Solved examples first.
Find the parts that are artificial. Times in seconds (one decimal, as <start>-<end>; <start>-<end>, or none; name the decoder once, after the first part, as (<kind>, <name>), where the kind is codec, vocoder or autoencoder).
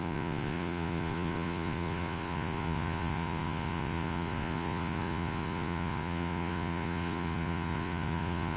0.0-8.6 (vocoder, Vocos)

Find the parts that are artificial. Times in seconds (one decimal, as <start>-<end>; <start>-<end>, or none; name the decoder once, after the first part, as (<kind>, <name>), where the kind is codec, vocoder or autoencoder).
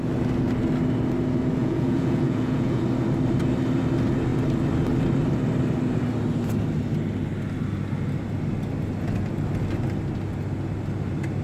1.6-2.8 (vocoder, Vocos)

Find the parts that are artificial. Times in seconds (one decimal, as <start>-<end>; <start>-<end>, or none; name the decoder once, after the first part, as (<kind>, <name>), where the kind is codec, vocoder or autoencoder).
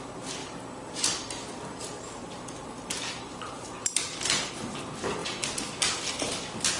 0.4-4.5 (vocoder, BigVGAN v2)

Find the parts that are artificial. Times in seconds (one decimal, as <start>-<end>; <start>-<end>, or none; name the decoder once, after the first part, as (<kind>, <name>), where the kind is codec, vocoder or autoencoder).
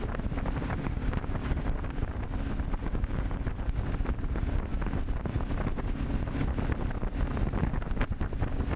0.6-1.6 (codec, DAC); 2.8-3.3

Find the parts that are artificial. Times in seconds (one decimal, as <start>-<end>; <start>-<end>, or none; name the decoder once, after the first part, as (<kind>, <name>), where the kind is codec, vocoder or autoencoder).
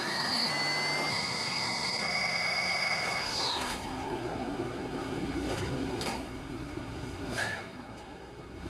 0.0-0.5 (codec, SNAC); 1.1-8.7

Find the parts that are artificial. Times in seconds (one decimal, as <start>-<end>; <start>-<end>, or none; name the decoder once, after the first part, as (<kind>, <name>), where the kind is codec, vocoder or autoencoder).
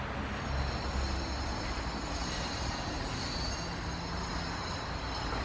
2.2-2.7 (vocoder, BigVGAN v2)